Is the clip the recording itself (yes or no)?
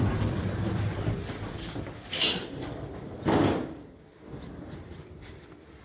no